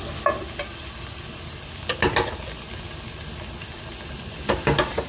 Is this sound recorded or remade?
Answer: recorded